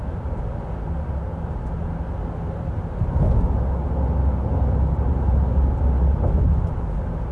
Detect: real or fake real